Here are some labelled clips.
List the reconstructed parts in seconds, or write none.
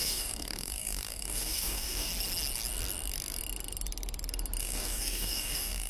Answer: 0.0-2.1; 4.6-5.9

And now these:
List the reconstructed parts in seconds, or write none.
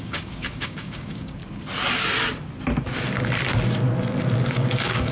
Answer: 0.0-1.4; 4.5-5.1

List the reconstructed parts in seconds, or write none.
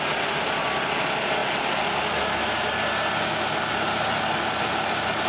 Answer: none